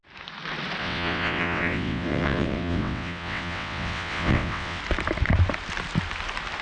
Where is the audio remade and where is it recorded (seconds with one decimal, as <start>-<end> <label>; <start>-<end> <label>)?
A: 0.0-0.8 recorded; 0.8-4.8 remade; 4.8-6.6 recorded